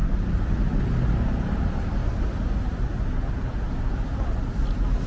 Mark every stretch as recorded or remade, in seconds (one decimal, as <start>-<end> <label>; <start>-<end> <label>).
0.0-5.1 recorded